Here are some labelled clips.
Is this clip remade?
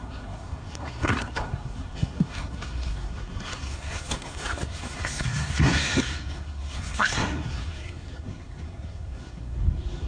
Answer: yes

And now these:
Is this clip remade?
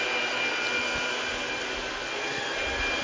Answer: no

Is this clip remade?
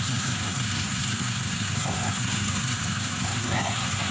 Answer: yes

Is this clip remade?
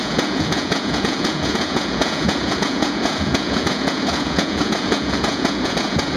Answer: yes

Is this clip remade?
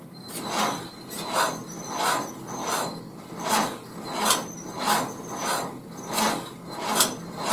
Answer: no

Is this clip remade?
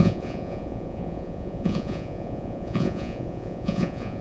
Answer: yes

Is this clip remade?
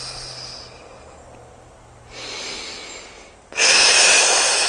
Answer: no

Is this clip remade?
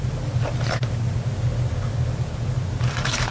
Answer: no